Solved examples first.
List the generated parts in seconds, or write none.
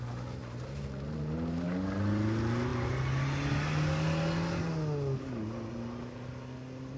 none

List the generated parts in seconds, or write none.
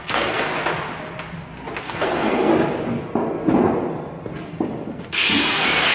0.0-0.5 (codec, SNAC); 1.8-2.5; 4.9-5.9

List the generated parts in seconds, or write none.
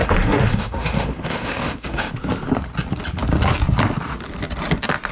0.0-2.1 (autoencoder, DAC-VAE)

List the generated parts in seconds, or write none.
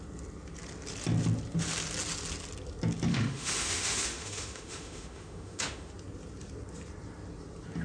3.1-5.9 (autoencoder, DAC-VAE)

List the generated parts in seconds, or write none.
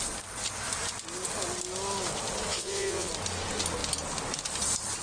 2.5-3.1 (vocoder, Vocos)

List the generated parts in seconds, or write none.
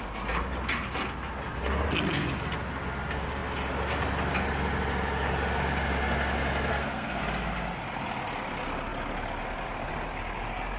6.7-7.2 (codec, SNAC)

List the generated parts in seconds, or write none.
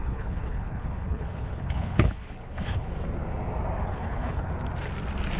0.0-2.9 (codec, HILCodec); 3.9-4.5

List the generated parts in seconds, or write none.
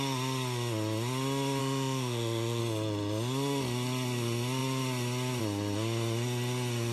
1.6-2.6 (autoencoder, DAC-VAE)